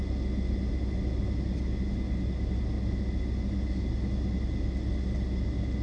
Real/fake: real